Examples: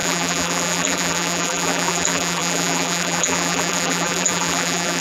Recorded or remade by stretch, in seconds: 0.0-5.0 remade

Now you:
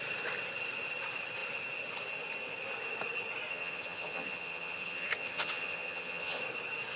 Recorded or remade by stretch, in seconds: 0.0-3.5 recorded; 3.5-6.4 remade; 6.4-7.0 recorded

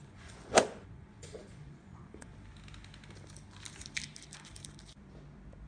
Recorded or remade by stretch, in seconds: 0.0-2.3 remade; 2.3-5.7 recorded

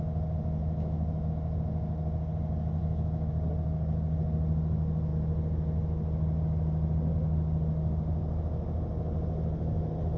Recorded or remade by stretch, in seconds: 0.0-0.6 recorded; 0.6-1.3 remade; 1.3-2.8 recorded; 2.8-3.3 remade; 3.3-10.2 recorded

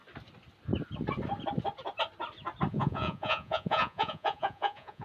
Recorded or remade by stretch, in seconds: 0.0-2.7 recorded; 2.7-5.0 remade

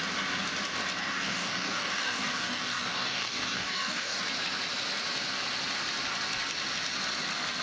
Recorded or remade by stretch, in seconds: 0.0-1.0 recorded; 1.0-4.2 remade; 4.2-7.6 recorded

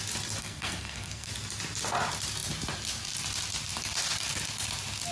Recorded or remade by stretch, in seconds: 0.0-0.4 recorded; 0.4-1.3 remade; 1.3-5.1 recorded